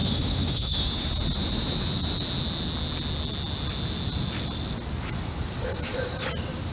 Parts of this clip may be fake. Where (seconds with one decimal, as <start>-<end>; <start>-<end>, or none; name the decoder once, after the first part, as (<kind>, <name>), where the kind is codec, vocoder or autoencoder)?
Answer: 0.0-0.8 (autoencoder, DAC-VAE)